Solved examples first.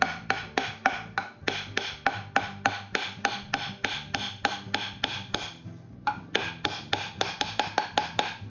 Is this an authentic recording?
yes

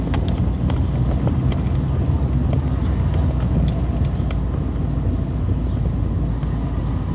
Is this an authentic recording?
yes